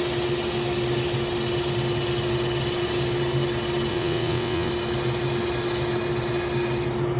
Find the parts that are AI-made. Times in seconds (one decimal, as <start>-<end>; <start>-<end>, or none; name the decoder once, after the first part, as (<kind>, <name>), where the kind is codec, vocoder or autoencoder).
3.9-4.7 (vocoder, WaveNeXt)